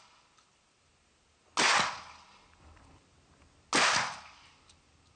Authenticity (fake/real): real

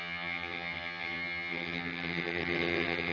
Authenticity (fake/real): fake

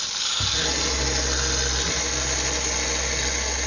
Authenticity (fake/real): real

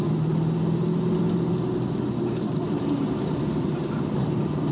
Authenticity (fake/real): real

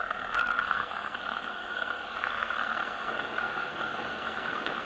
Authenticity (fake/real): fake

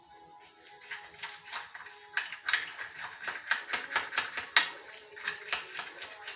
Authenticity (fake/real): real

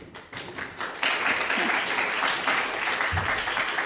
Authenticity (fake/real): real